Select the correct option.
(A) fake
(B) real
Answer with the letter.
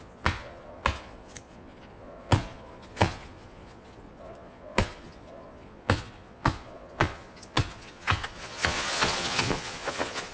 A